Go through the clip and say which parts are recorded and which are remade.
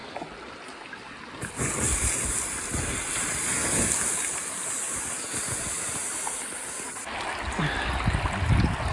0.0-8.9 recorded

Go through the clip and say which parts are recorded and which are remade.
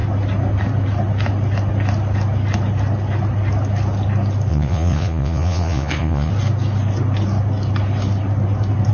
0.0-4.5 recorded; 4.5-6.3 remade; 6.3-8.9 recorded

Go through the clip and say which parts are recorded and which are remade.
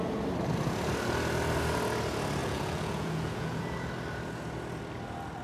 0.0-2.4 recorded; 2.4-3.6 remade; 3.6-5.4 recorded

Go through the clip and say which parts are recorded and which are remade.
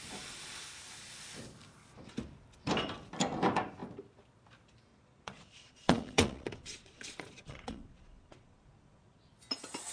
0.0-4.9 recorded; 4.9-9.3 remade; 9.3-9.9 recorded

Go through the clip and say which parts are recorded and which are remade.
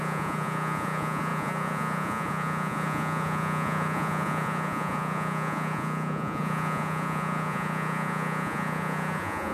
0.0-9.5 remade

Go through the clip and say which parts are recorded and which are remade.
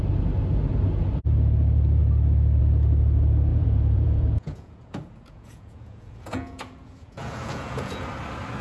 0.0-3.5 recorded; 3.5-8.1 remade; 8.1-8.6 recorded